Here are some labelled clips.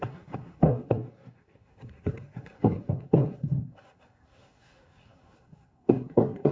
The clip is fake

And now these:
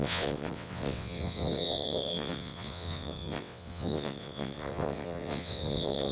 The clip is fake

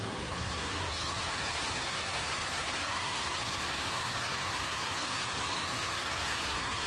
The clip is fake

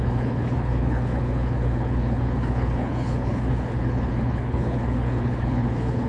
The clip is fake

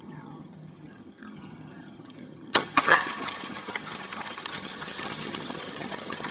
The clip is fake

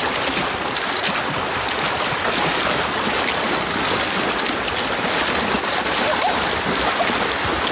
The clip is real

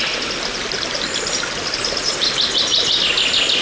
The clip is real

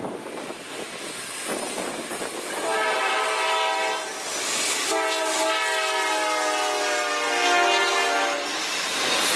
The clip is real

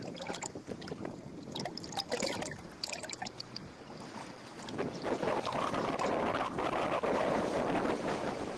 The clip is real